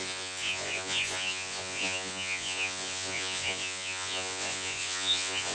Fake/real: fake